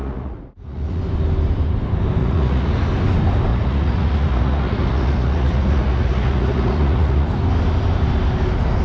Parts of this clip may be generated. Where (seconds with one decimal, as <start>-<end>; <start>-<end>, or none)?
0.0-1.0; 2.2-2.7; 3.5-7.3